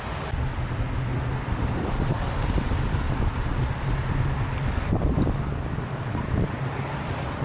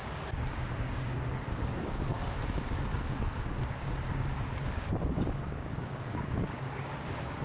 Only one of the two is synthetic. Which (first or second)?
second